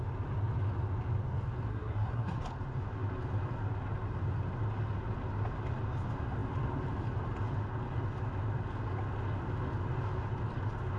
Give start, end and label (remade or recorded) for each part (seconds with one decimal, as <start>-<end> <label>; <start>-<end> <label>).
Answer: 0.0-1.7 recorded; 1.7-2.4 remade; 2.4-11.0 recorded